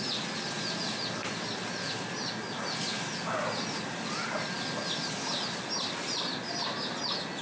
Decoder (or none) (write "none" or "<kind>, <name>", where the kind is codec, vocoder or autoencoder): none